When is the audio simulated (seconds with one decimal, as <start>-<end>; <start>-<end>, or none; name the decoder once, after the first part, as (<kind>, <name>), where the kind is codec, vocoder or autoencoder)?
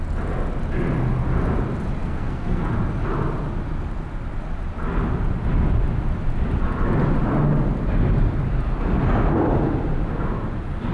2.0-2.7 (codec, SNAC)